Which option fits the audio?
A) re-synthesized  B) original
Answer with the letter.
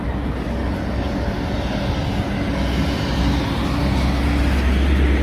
B